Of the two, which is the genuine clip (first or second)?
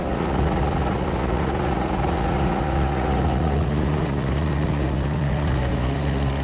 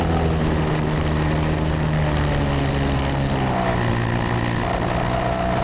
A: second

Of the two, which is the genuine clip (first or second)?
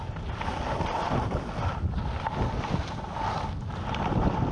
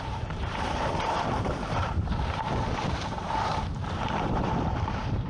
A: first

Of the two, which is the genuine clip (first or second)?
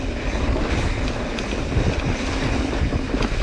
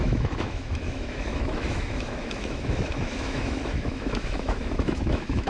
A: first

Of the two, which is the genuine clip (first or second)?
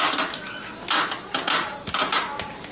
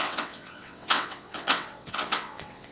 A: first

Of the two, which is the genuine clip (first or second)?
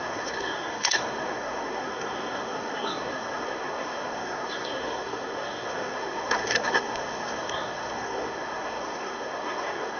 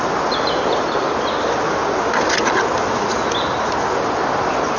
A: second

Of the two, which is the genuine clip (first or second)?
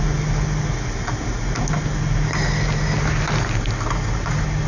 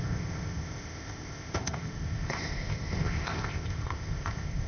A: first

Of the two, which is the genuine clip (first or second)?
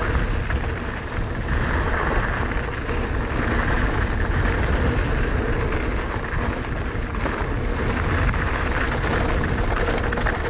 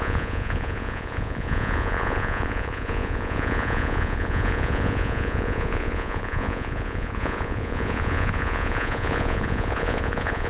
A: first